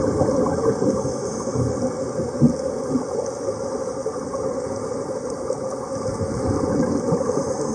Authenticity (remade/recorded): recorded